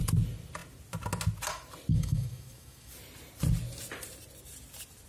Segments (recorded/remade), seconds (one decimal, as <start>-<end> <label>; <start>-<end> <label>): 0.0-1.9 recorded; 1.9-2.9 remade; 2.9-5.1 recorded